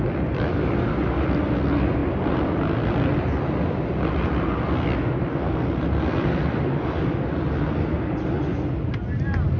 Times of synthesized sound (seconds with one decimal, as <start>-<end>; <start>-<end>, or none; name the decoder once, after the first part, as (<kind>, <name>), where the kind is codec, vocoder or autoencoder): none